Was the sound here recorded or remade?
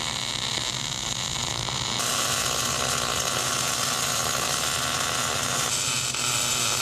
recorded